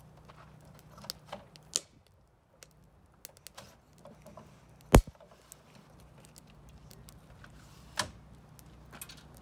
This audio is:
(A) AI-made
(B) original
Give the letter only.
B